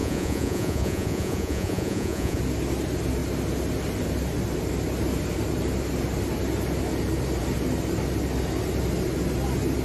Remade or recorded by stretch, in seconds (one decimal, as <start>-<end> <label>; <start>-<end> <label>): 0.0-2.4 remade; 2.4-9.8 recorded